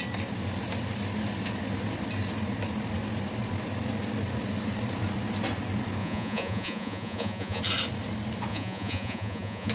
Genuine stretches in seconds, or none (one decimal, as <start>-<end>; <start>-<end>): 0.0-6.0; 7.6-8.5